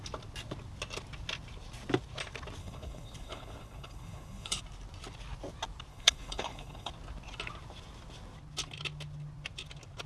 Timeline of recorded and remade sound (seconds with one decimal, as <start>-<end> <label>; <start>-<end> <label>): 0.0-2.6 recorded; 2.6-4.6 remade; 4.6-5.9 recorded; 5.9-6.9 remade; 6.9-10.1 recorded

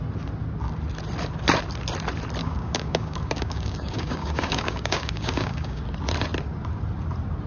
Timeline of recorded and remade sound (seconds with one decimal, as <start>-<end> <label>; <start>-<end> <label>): 0.0-2.4 recorded; 2.4-5.8 remade; 5.8-7.5 recorded

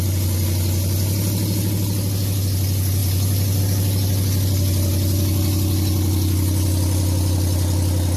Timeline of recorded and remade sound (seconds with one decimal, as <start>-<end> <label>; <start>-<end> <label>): 0.0-3.0 recorded; 3.0-3.6 remade; 3.6-8.2 recorded